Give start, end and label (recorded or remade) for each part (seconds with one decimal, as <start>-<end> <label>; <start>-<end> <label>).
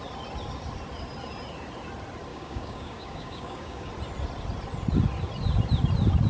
0.0-2.3 recorded; 2.3-3.9 remade; 3.9-6.3 recorded